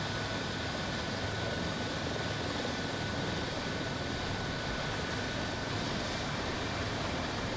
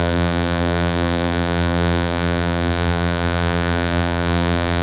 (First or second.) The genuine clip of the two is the first